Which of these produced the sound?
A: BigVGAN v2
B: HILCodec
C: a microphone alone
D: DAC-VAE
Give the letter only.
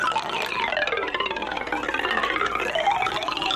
C